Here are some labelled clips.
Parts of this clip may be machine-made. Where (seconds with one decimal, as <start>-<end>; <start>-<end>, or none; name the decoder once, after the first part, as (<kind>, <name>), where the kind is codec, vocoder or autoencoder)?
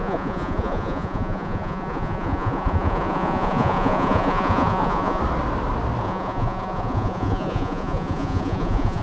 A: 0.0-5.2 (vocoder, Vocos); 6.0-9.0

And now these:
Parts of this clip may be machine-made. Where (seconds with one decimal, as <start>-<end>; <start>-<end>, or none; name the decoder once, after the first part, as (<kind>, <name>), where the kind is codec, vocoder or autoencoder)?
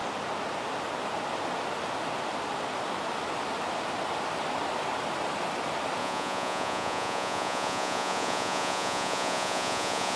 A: 6.0-10.2 (vocoder, Vocos)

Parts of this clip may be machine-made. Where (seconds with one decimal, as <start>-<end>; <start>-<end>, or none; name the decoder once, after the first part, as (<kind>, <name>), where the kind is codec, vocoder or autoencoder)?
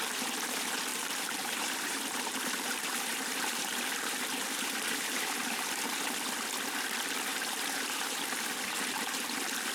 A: 0.9-6.0 (vocoder, BigVGAN v2); 7.3-9.2